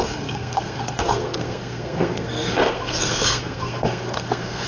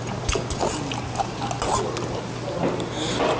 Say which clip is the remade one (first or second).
first